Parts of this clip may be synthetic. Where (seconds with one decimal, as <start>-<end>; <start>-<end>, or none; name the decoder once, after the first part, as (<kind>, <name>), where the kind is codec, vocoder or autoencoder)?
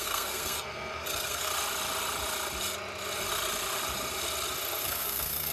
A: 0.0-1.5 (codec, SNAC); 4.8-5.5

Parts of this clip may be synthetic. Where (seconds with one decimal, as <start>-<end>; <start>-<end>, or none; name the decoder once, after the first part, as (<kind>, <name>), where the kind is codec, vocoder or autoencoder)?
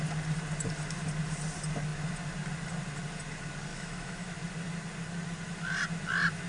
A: 3.7-4.3 (autoencoder, DAC-VAE)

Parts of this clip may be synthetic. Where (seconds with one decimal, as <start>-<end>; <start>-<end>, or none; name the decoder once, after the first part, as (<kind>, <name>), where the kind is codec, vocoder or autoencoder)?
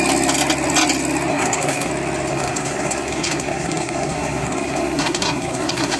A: 1.3-1.9 (codec, SNAC); 2.3-6.0